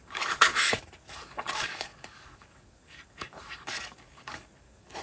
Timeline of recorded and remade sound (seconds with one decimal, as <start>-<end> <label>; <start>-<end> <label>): 0.0-5.0 remade